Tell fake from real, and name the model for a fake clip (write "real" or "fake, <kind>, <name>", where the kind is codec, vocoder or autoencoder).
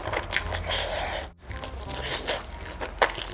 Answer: real